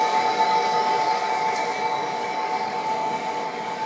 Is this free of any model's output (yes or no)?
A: no